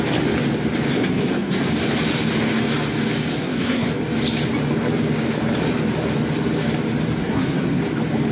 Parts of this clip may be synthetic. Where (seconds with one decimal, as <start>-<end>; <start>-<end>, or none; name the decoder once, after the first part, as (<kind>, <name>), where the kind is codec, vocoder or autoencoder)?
0.9-1.7 (codec, SNAC); 3.3-3.9; 7.2-7.8